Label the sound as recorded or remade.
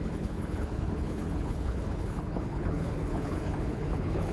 remade